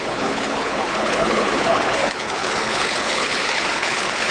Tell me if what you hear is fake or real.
fake